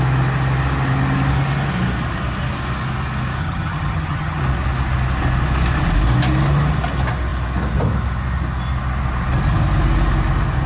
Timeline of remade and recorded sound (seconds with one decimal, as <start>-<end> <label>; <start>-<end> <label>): 0.0-3.4 recorded; 3.4-4.4 remade; 4.4-10.7 recorded